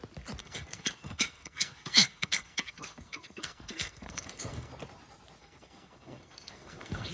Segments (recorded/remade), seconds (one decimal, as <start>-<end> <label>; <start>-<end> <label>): 0.0-0.4 recorded; 0.4-4.7 remade; 4.7-5.4 recorded; 5.4-7.1 remade